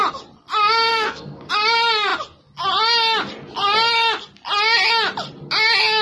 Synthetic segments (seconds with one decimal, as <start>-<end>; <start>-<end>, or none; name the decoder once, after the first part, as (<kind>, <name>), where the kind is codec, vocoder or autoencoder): 0.9-1.5 (codec, SNAC)